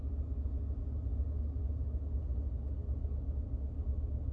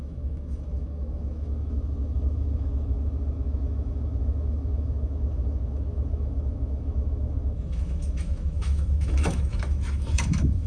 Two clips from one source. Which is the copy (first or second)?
second